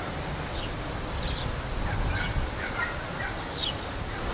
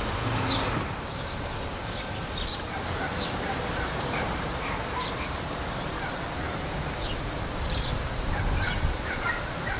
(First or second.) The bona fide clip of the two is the first